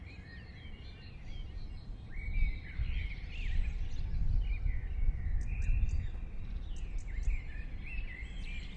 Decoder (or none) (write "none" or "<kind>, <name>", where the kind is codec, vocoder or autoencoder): none